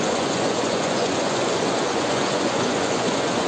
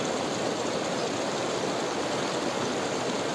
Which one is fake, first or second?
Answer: first